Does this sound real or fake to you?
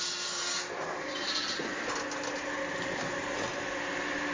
real